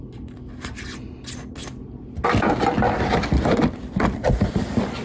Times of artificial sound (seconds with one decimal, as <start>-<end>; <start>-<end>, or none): none